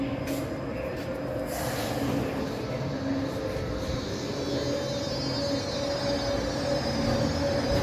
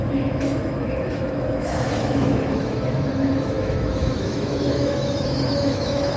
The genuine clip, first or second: first